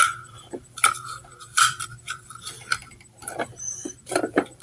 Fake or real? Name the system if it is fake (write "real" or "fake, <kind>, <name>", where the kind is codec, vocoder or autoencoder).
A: fake, vocoder, BigVGAN v2